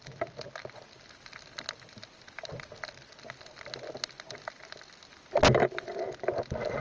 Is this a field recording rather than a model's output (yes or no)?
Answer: yes